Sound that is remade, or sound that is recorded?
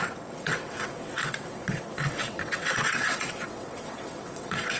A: remade